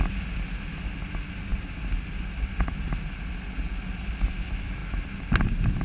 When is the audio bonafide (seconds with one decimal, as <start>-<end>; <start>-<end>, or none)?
0.0-5.8